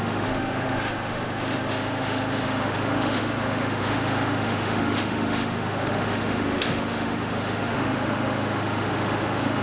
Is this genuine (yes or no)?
no